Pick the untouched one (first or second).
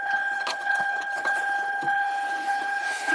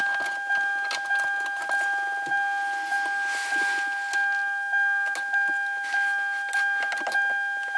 second